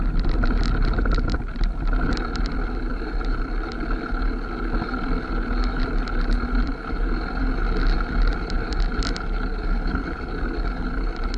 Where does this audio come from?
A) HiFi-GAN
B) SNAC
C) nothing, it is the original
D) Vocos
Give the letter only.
C